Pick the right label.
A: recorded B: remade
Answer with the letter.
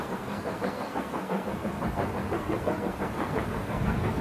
B